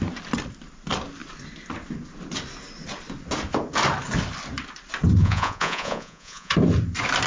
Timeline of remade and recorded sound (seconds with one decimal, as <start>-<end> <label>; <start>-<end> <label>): 0.0-5.2 recorded; 5.2-6.5 remade; 6.5-7.3 recorded